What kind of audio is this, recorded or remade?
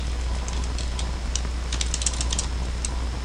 recorded